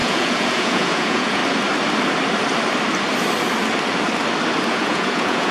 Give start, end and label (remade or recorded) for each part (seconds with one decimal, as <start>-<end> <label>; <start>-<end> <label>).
0.0-1.4 remade; 1.4-4.7 recorded; 4.7-5.5 remade